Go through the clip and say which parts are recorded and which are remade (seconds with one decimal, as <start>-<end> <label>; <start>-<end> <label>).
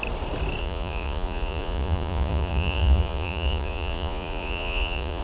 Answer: 0.0-0.6 recorded; 0.6-5.2 remade